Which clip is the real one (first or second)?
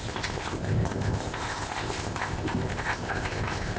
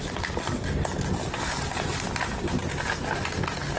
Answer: second